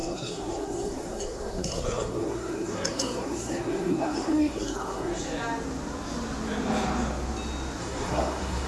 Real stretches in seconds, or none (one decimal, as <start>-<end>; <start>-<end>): 5.2-7.8